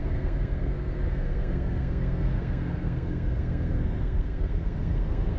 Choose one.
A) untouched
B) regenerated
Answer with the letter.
B